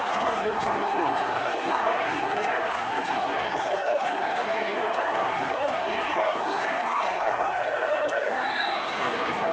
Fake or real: fake